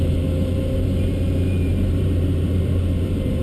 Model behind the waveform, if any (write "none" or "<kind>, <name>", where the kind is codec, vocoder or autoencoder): vocoder, BigVGAN v2